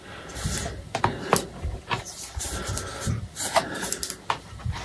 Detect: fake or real real